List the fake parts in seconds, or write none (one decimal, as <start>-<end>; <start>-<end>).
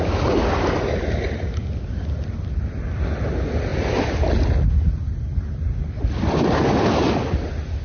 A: none